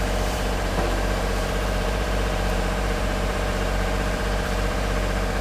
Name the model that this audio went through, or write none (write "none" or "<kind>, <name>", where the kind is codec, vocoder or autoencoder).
vocoder, BigVGAN v2